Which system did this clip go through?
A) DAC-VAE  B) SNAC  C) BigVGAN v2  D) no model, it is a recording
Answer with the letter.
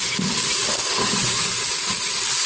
C